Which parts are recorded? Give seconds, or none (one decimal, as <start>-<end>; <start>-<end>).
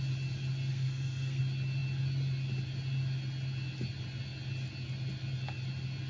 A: 0.0-0.7; 1.4-6.1